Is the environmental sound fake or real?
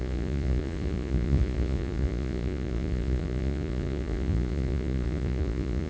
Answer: fake